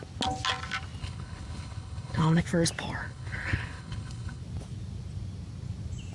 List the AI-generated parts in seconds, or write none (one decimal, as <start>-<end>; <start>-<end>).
1.0-2.4; 3.0-4.4